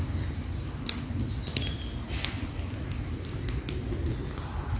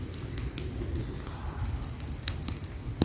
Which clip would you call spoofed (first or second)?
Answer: second